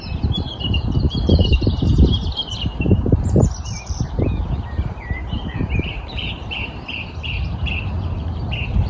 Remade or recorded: remade